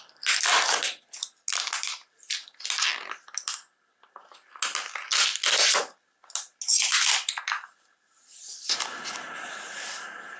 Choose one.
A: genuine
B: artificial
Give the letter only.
A